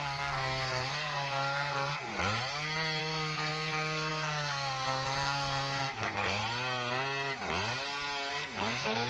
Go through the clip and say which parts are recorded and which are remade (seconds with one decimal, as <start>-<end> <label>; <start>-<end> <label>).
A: 0.0-2.1 remade; 2.1-3.0 recorded; 3.0-6.4 remade; 6.4-8.3 recorded; 8.3-9.1 remade

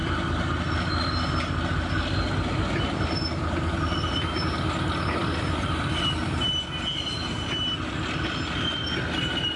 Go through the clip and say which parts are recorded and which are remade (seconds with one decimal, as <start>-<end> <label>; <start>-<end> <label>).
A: 0.0-9.6 recorded

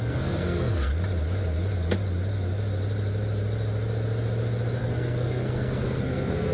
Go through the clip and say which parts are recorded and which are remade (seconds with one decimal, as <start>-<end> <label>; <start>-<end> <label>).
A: 0.0-0.9 remade; 0.9-4.8 recorded; 4.8-6.5 remade

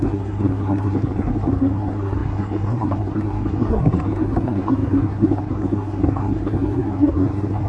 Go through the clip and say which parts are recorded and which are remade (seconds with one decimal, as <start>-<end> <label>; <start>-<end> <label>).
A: 0.0-7.7 remade